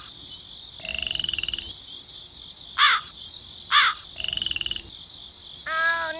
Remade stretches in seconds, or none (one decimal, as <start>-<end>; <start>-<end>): none